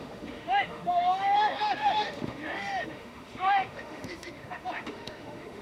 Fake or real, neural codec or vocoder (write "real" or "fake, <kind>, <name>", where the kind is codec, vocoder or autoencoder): fake, autoencoder, DAC-VAE